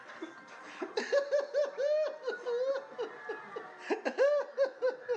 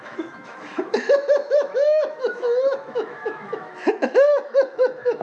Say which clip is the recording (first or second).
first